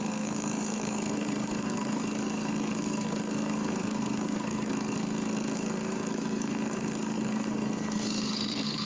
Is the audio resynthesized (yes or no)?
yes